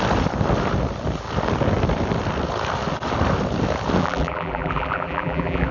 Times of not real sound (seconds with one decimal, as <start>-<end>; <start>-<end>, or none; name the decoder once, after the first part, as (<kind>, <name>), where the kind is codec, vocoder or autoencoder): 4.0-5.7 (vocoder, BigVGAN v2)